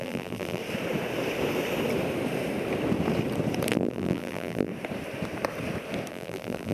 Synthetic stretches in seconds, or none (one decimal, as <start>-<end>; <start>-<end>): 0.0-0.6; 3.7-4.7; 6.1-6.7